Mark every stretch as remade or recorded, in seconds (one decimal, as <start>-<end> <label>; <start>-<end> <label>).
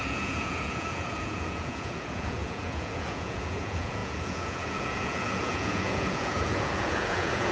0.0-7.5 remade